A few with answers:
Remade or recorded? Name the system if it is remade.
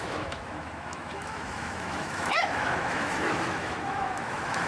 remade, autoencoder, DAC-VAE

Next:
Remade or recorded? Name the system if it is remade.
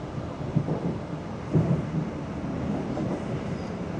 recorded